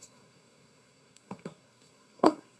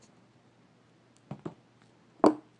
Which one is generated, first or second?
first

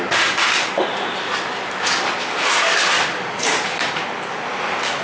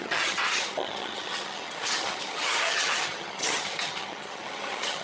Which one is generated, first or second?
second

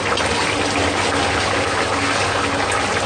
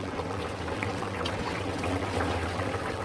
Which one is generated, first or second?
second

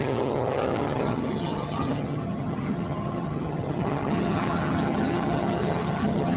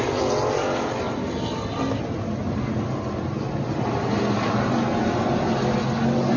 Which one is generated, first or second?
first